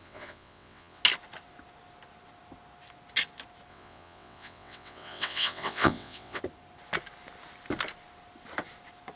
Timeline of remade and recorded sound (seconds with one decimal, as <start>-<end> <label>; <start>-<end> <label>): 0.0-1.0 remade; 1.0-3.7 recorded; 3.7-6.4 remade; 6.4-9.2 recorded